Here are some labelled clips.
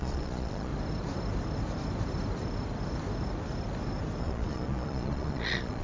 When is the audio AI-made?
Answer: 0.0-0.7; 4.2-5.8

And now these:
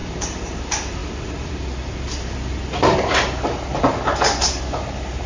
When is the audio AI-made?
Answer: none

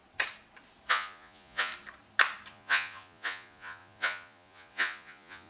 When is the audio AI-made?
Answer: 0.9-1.7; 2.5-5.5

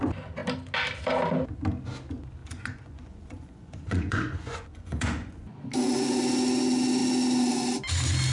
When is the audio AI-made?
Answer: 2.4-5.6

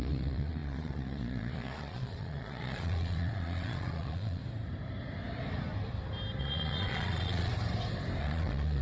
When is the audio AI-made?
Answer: 0.0-4.4; 6.4-7.5; 8.2-8.8

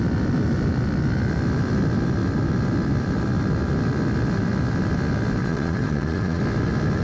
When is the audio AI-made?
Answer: 5.4-6.4

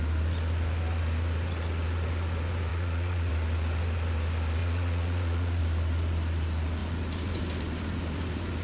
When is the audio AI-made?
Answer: 2.7-3.3; 4.6-5.6